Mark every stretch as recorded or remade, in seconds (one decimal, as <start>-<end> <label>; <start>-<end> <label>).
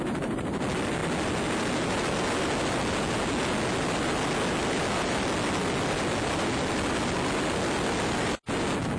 0.0-9.0 recorded